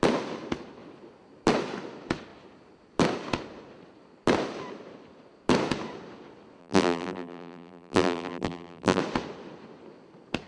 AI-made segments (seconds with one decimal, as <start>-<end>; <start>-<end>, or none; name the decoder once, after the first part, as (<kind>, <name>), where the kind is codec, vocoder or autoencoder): 6.6-9.0 (vocoder, BigVGAN v2)